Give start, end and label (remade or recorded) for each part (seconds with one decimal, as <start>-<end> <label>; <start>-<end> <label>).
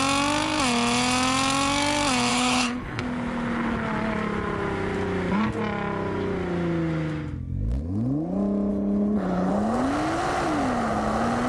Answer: 0.0-2.3 recorded; 2.3-3.0 remade; 3.0-8.7 recorded; 8.7-9.5 remade; 9.5-11.5 recorded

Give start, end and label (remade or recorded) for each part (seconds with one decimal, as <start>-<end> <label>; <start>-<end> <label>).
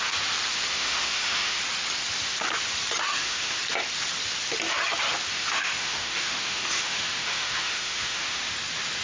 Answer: 0.0-0.7 recorded; 0.7-1.6 remade; 1.6-3.1 recorded; 3.1-3.6 remade; 3.6-5.3 recorded; 5.3-8.5 remade; 8.5-9.0 recorded